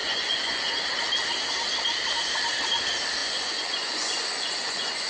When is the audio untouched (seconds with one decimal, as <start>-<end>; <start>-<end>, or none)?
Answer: 0.7-3.2